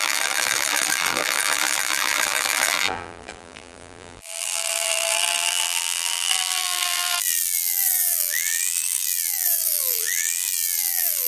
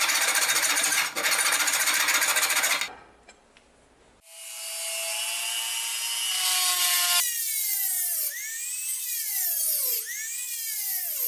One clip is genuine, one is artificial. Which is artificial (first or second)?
first